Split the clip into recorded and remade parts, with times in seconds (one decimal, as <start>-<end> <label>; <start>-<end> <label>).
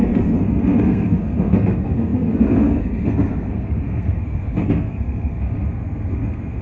0.0-6.6 remade